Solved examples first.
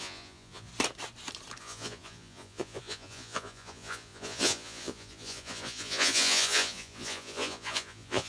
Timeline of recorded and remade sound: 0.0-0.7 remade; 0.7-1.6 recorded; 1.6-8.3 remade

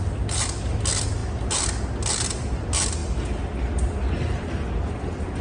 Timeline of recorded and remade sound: 0.0-5.4 recorded

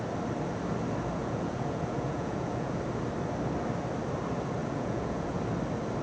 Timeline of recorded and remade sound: 0.0-1.2 recorded; 1.2-2.8 remade; 2.8-4.6 recorded; 4.6-5.4 remade; 5.4-6.0 recorded

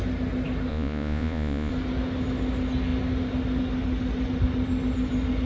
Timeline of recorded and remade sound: 0.0-0.7 recorded; 0.7-1.7 remade; 1.7-5.5 recorded

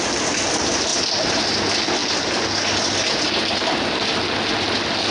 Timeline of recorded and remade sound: 0.0-5.1 recorded

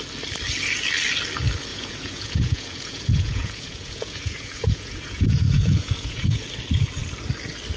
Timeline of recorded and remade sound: 0.0-1.7 recorded; 1.7-6.4 remade; 6.4-7.8 recorded

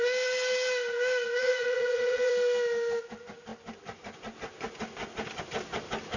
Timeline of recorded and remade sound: 0.0-1.4 recorded; 1.4-2.3 remade; 2.3-6.2 recorded